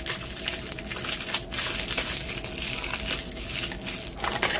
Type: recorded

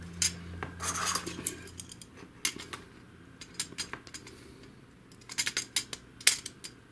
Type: recorded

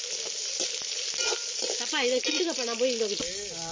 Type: recorded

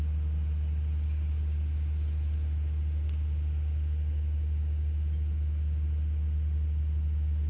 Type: recorded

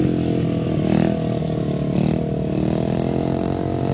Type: recorded